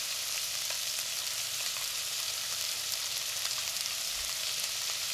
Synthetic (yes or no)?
yes